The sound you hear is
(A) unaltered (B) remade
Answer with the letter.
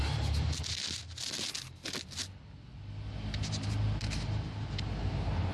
A